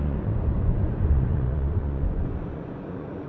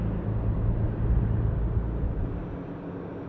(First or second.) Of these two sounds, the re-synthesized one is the first